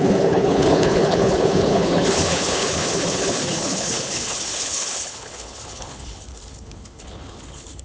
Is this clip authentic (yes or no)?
no